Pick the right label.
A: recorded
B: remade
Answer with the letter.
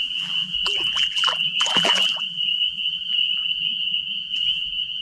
B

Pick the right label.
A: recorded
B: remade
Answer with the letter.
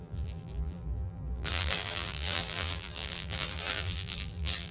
B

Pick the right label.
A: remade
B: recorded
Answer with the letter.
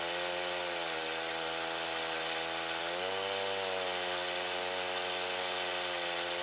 B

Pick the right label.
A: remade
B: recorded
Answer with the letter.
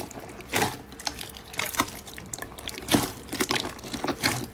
A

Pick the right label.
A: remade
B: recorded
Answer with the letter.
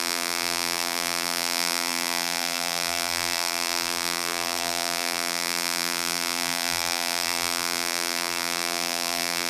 A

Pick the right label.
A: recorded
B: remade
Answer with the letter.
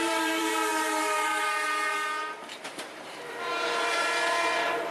B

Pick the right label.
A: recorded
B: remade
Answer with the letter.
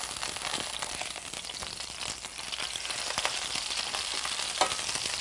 A